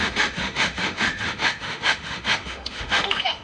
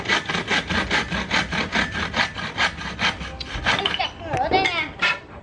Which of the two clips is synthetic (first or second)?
first